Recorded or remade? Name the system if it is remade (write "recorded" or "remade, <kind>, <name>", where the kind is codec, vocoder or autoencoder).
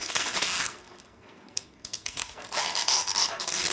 remade, codec, SNAC